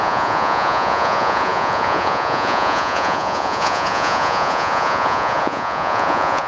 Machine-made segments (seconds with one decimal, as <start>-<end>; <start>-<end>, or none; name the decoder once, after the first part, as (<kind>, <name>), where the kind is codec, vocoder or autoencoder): 0.0-6.5 (vocoder, Vocos)